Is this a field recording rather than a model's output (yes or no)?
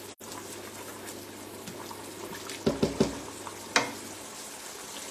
yes